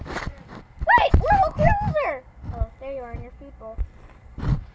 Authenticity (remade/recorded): remade